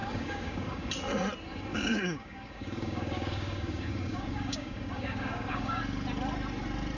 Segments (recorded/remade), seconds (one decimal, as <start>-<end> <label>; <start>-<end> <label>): 0.0-0.9 remade; 0.9-1.7 recorded; 1.7-5.8 remade; 5.8-7.0 recorded